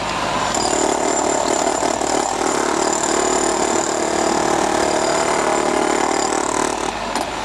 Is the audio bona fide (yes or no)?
yes